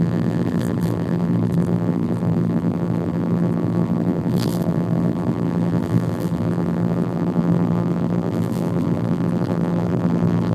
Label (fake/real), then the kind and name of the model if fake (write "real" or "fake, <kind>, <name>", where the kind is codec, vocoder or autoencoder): fake, vocoder, BigVGAN v2